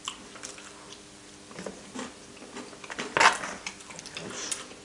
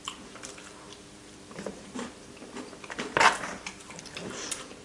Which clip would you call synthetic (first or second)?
second